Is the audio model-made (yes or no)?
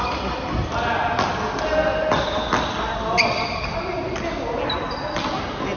no